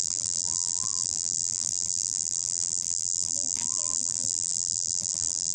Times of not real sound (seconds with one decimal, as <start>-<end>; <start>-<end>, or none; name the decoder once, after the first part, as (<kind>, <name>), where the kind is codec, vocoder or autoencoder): 0.0-5.5 (vocoder, BigVGAN v2)